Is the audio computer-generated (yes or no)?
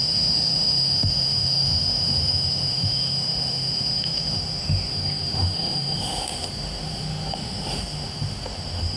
yes